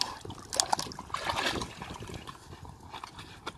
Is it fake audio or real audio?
real